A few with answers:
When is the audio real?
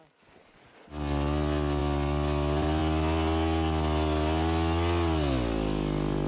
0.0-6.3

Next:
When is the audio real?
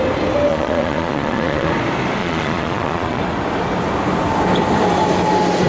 0.0-0.5; 1.7-2.2; 3.2-5.7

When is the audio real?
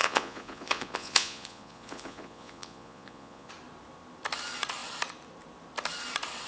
3.5-6.5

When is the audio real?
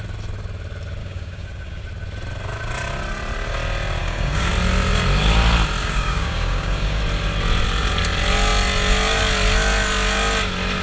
0.0-1.0; 1.8-4.0; 4.5-5.8; 7.0-10.8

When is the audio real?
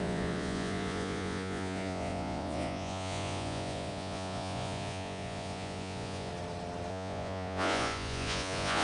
6.3-6.9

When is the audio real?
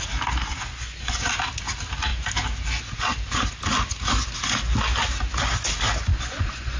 0.0-0.5; 1.3-6.1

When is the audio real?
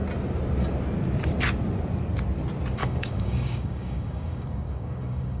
0.0-2.8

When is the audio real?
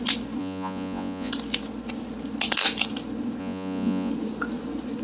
0.0-0.4; 1.3-3.4; 4.1-5.0